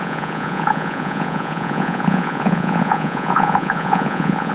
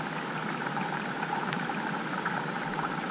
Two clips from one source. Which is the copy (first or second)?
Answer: first